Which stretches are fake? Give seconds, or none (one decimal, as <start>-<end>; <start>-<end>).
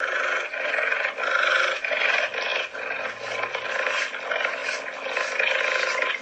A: none